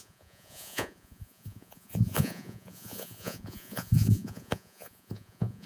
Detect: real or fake fake